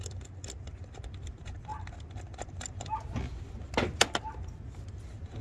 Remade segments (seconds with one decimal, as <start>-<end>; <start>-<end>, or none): none